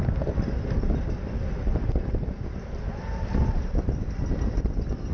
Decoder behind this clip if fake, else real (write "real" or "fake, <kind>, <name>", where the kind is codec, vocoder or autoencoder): real